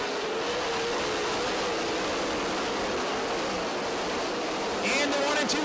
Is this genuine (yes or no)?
yes